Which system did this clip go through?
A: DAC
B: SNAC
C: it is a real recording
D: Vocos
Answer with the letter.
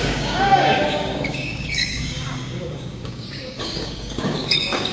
A